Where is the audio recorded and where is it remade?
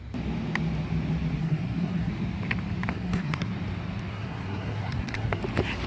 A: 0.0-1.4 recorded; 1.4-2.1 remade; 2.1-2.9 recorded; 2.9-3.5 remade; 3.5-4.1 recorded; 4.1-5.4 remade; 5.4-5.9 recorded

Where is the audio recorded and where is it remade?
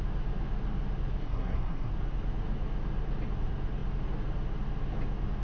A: 0.0-1.2 recorded; 1.2-1.9 remade; 1.9-5.4 recorded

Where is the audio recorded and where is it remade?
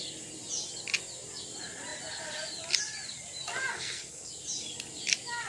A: 0.0-3.7 recorded; 3.7-4.3 remade; 4.3-5.5 recorded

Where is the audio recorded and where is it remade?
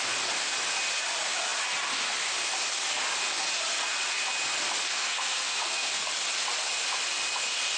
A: 0.0-4.9 recorded; 4.9-6.1 remade; 6.1-7.8 recorded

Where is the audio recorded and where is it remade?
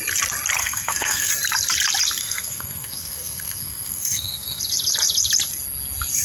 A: 0.0-0.6 recorded; 0.6-1.3 remade; 1.3-2.2 recorded; 2.2-4.6 remade; 4.6-6.2 recorded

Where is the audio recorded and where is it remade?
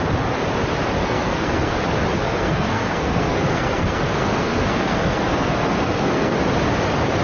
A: 0.0-1.0 recorded; 1.0-1.7 remade; 1.7-2.1 recorded; 2.1-6.4 remade; 6.4-7.2 recorded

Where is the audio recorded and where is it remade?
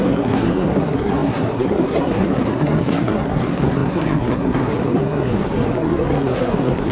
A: 0.0-6.9 remade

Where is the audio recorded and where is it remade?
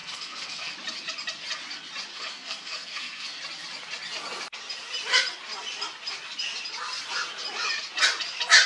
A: 0.0-0.7 remade; 0.7-2.1 recorded; 2.1-3.4 remade; 3.4-8.7 recorded